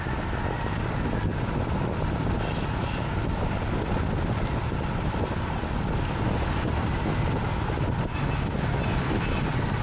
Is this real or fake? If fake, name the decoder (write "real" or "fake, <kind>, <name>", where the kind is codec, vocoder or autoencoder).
real